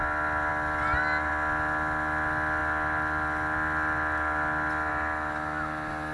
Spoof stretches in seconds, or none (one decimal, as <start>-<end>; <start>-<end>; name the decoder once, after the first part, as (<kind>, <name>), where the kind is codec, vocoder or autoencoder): none